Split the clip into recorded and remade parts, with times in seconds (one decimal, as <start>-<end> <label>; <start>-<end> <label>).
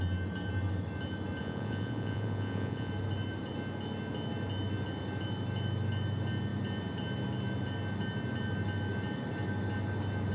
0.0-1.4 recorded; 1.4-2.9 remade; 2.9-10.3 recorded